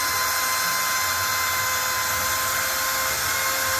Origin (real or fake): real